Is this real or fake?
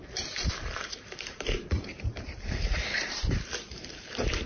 fake